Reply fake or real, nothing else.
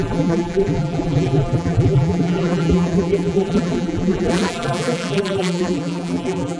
fake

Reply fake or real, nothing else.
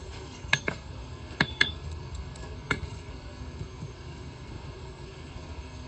fake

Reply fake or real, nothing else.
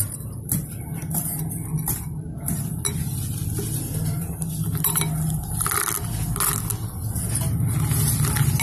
real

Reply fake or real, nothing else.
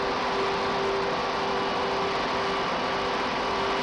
real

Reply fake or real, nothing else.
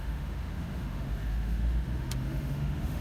fake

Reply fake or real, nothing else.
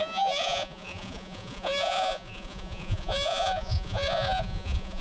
fake